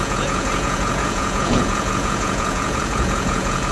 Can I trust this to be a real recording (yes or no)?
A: no